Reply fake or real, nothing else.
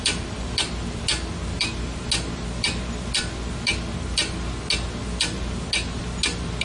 real